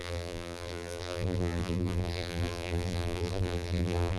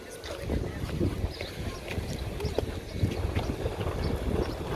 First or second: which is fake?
first